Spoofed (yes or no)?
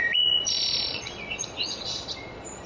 yes